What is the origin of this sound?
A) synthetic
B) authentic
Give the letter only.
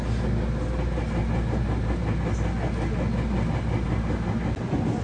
B